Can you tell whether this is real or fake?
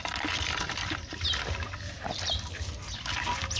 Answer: real